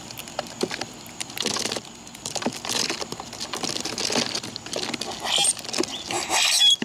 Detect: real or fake real